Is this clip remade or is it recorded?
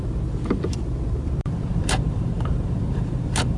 remade